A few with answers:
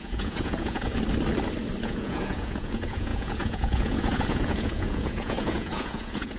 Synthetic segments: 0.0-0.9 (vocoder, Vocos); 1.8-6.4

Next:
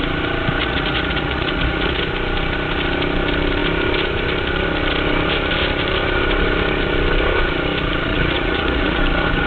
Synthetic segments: 0.6-2.0 (vocoder, Vocos); 8.1-9.0

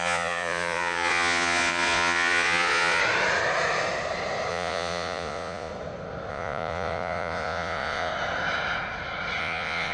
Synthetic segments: 0.0-3.0 (vocoder, Vocos); 4.5-5.7; 6.3-8.1; 9.4-9.9

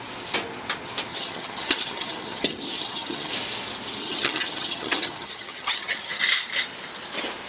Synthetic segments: 1.1-3.3 (vocoder, HiFi-GAN); 4.0-6.2

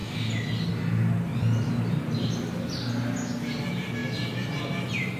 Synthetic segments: 0.0-0.7 (vocoder, BigVGAN v2); 1.3-1.8; 4.0-4.6

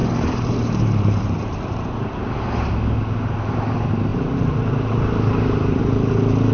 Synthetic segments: 0.0-2.7 (vocoder, BigVGAN v2); 4.1-5.8